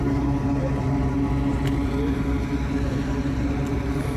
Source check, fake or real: real